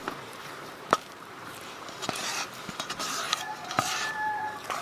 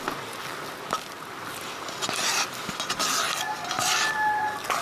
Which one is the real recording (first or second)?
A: second